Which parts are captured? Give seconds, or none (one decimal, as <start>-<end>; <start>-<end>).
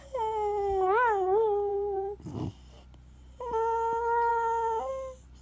0.0-1.7; 2.5-5.4